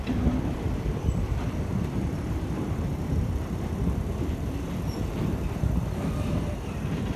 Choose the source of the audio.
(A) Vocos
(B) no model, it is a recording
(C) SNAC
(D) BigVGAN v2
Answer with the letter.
D